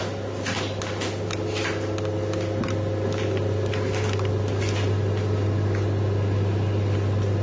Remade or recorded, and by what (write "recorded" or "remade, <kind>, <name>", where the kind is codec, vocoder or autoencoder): recorded